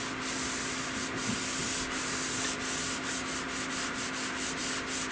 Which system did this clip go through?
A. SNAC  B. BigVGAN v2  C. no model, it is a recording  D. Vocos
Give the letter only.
C